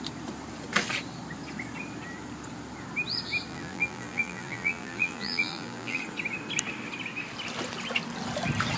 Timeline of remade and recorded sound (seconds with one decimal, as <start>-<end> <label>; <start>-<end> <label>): 0.0-3.5 recorded; 3.5-6.0 remade; 6.0-8.8 recorded